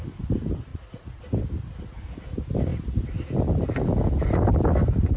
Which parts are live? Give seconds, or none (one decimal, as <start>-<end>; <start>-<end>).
0.0-0.7; 1.2-5.2